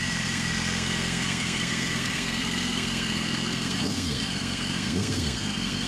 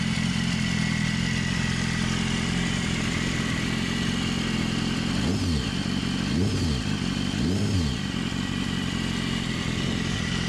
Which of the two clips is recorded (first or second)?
second